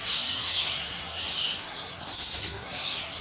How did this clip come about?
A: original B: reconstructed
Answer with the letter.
B